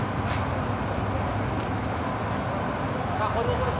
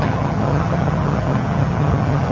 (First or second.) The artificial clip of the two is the second